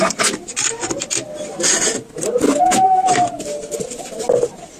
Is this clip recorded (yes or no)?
yes